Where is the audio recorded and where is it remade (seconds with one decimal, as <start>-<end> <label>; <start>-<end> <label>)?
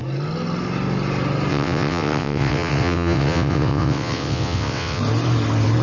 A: 0.0-1.5 recorded; 1.5-5.0 remade; 5.0-5.8 recorded